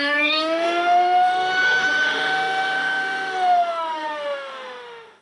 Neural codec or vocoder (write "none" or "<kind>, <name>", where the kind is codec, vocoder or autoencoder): autoencoder, DAC-VAE